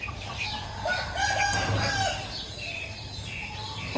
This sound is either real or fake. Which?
real